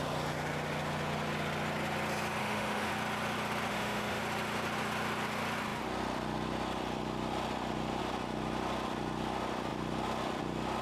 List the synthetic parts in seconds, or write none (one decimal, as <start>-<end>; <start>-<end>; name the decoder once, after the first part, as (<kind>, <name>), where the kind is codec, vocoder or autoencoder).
2.4-2.9 (autoencoder, DAC-VAE); 3.7-4.2